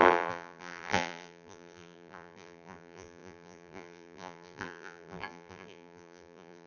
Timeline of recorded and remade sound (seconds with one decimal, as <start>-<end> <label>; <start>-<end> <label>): 0.0-6.7 remade